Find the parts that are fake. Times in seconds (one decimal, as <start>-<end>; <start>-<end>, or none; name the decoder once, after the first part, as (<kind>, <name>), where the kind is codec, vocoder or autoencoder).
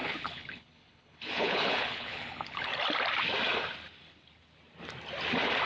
0.0-2.7 (codec, HILCodec)